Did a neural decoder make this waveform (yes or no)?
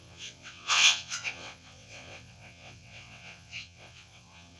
yes